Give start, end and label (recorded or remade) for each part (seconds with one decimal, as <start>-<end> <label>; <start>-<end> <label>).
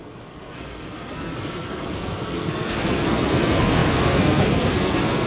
0.0-5.3 remade